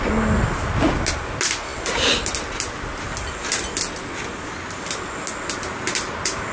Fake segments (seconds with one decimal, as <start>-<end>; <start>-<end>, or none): none